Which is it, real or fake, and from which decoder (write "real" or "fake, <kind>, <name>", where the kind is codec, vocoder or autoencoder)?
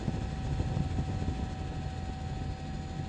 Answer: real